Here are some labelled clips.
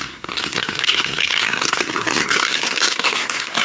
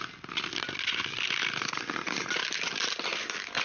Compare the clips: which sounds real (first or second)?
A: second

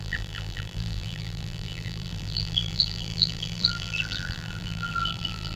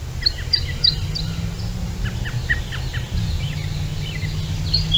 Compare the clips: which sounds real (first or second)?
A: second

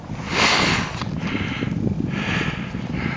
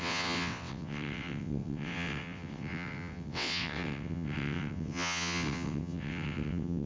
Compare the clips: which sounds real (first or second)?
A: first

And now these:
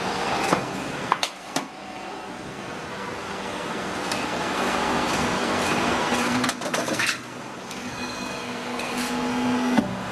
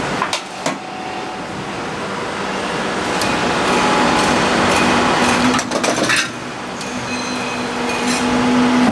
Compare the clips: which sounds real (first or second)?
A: second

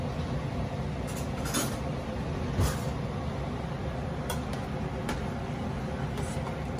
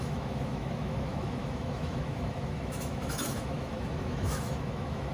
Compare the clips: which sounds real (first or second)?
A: first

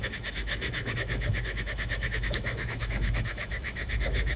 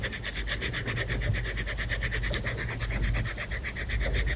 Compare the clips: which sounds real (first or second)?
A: second